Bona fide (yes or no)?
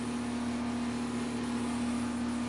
yes